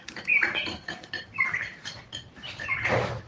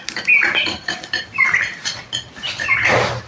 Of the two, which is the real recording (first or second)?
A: second